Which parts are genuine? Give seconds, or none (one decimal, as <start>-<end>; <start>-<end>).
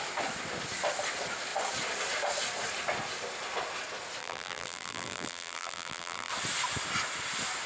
0.0-4.2; 6.3-7.7